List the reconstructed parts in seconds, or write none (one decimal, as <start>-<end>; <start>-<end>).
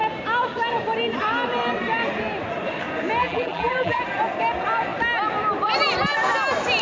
3.2-4.0